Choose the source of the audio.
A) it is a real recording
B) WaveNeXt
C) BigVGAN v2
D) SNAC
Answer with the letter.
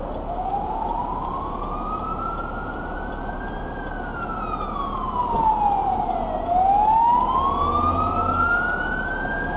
A